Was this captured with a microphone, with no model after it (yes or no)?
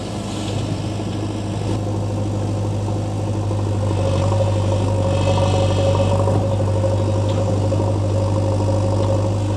yes